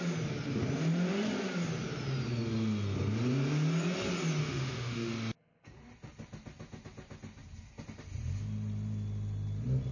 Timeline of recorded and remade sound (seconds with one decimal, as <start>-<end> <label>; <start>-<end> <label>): 0.0-4.4 recorded; 4.4-5.1 remade; 5.1-9.9 recorded